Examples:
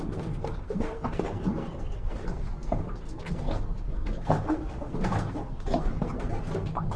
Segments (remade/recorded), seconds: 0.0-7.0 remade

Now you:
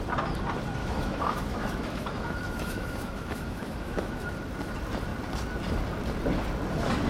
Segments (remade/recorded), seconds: 0.0-0.8 recorded; 0.8-4.3 remade; 4.3-7.1 recorded